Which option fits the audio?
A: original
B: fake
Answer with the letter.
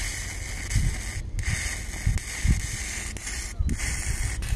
A